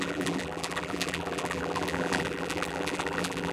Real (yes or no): no